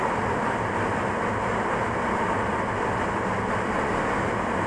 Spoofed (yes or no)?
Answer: no